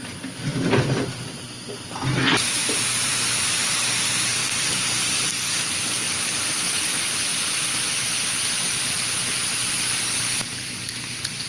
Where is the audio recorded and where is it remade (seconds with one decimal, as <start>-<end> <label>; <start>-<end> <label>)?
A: 0.0-4.4 recorded; 4.4-5.5 remade; 5.5-7.3 recorded; 7.3-7.9 remade; 7.9-11.5 recorded